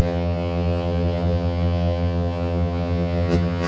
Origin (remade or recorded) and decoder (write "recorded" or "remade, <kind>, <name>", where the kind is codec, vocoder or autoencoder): remade, vocoder, HiFi-GAN